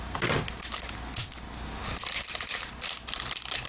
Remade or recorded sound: recorded